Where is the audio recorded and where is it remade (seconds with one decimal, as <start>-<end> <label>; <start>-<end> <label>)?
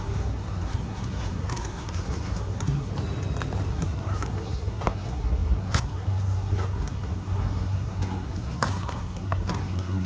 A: 0.0-2.9 remade; 2.9-3.7 recorded; 3.7-10.1 remade